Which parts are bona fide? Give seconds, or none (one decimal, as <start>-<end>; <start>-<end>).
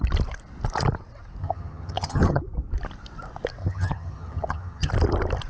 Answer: 0.0-1.4; 2.4-3.6; 4.9-5.5